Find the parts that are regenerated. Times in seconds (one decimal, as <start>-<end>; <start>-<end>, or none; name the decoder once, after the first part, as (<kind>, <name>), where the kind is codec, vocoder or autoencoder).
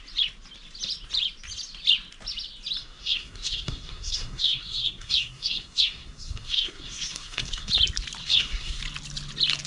2.8-7.7 (codec, SNAC); 8.2-8.8